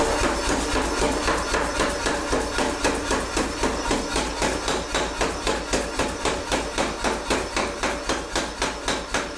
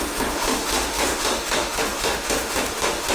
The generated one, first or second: second